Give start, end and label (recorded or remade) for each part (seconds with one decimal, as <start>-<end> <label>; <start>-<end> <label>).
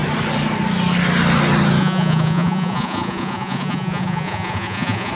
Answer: 0.0-1.8 recorded; 1.8-5.1 remade